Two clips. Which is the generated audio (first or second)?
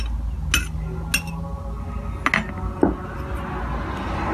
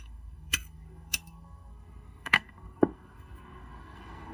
second